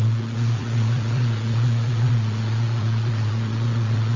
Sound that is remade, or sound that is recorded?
remade